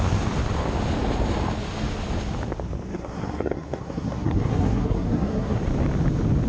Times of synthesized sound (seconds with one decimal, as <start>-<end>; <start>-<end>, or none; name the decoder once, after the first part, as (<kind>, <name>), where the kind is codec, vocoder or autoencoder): 2.9-5.6 (codec, SNAC)